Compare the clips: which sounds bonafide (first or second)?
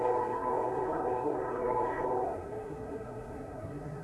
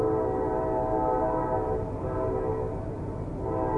second